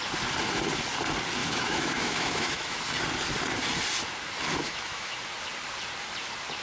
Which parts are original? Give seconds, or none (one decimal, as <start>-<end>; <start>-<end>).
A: 0.0-1.4; 2.8-4.6; 5.2-6.6